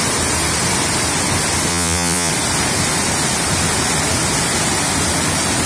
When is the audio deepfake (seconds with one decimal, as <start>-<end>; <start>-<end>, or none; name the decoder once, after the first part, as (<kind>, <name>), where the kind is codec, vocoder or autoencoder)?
1.7-2.3 (vocoder, Vocos)

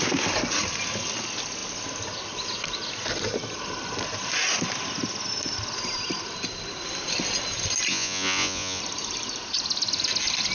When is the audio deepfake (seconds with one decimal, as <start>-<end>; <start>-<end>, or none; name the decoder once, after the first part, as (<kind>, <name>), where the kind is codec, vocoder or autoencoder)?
7.9-8.8 (vocoder, Vocos)

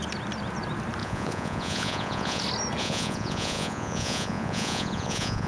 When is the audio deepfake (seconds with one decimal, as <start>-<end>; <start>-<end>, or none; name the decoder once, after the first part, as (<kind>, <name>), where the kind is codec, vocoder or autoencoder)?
1.0-2.4 (vocoder, Vocos); 2.8-5.5

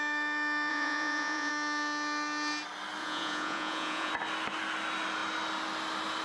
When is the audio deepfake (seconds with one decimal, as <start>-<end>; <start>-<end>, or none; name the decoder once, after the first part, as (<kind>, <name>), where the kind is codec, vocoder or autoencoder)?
0.7-1.5 (vocoder, Vocos); 3.0-4.1

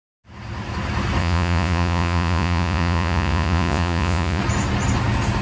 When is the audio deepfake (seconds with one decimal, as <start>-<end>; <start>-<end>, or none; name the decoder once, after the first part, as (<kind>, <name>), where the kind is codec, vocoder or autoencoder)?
1.2-4.4 (vocoder, Vocos)

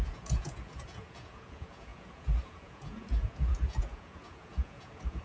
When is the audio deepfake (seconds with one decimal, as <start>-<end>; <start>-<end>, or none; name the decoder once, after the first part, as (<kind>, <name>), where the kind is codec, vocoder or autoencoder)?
0.0-5.2 (vocoder, Vocos)

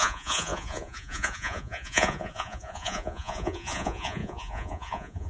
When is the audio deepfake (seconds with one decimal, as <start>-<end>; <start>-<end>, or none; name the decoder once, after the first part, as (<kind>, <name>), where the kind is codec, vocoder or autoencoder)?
0.0-5.3 (vocoder, Vocos)